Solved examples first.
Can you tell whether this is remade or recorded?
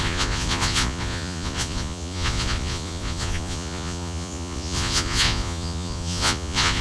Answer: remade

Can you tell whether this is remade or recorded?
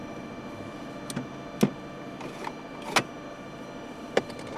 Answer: recorded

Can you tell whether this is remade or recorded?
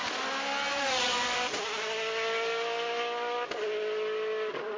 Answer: recorded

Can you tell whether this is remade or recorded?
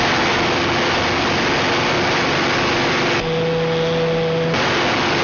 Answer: recorded